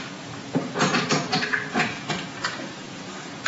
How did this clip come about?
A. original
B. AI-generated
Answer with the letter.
B